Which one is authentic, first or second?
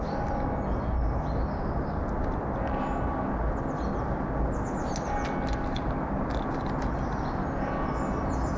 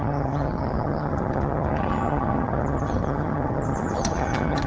first